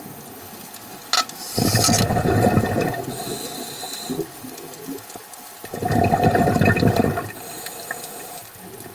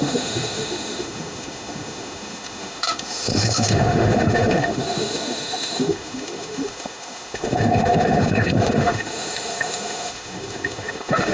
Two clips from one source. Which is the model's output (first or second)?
second